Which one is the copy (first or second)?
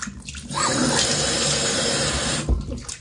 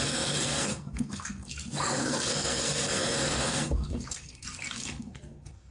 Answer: second